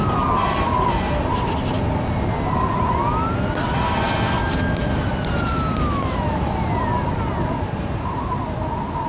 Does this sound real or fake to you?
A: real